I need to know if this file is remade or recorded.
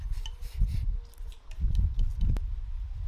recorded